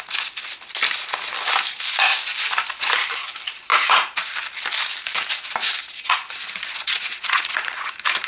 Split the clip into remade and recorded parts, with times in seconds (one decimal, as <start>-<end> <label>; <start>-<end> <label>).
0.0-3.7 recorded; 3.7-4.3 remade; 4.3-5.8 recorded; 5.8-7.9 remade; 7.9-8.3 recorded